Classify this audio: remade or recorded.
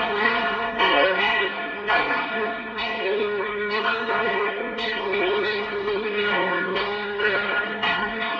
remade